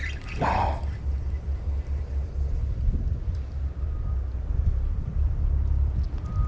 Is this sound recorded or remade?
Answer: remade